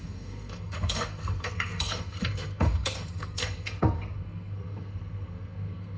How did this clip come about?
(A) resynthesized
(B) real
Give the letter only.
A